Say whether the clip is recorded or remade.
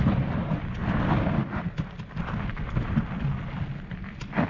recorded